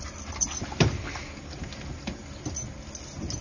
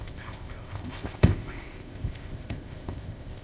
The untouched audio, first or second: first